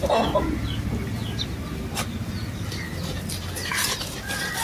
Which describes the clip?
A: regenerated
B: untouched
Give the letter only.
B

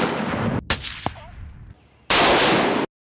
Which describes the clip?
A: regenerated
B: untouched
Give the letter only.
B